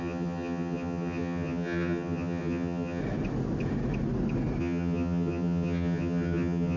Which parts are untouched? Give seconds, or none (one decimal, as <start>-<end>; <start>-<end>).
3.0-4.6